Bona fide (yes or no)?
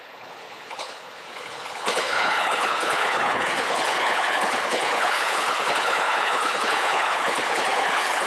no